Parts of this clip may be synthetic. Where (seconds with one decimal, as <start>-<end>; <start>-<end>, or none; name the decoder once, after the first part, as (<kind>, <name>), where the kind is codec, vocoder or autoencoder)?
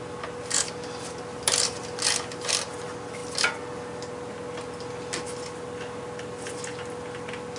none